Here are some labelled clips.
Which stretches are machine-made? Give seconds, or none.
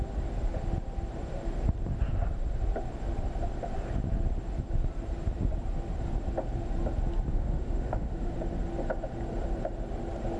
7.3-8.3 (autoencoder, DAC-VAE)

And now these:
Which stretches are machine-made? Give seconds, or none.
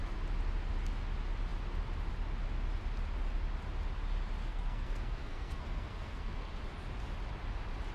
4.4-6.5 (codec, SNAC)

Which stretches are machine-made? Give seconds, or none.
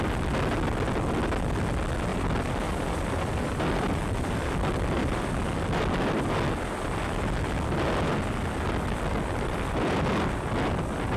2.1-5.3 (vocoder, BigVGAN v2)